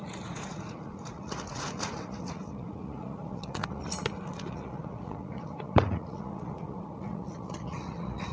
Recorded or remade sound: remade